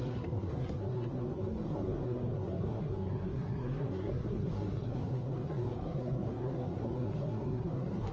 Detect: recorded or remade remade